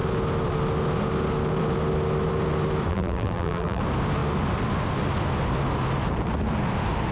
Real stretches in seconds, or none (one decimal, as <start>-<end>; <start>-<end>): 0.0-2.9; 3.8-7.1